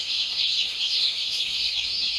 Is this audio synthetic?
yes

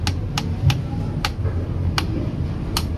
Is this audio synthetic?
no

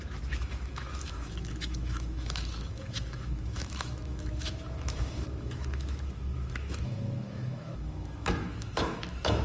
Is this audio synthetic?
yes